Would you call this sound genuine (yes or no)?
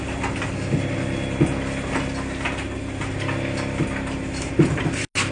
yes